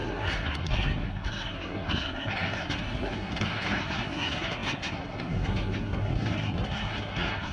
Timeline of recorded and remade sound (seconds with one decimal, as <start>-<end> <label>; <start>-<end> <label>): 0.0-7.5 remade